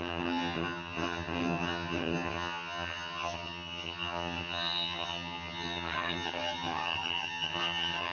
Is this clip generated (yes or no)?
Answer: yes